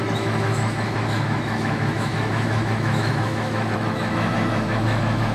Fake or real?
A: fake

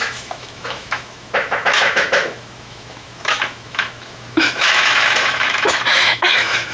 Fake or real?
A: fake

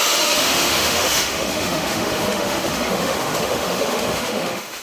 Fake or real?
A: fake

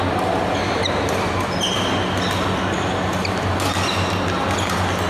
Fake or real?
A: real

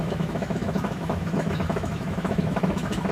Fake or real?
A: fake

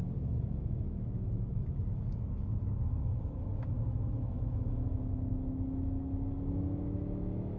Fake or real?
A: fake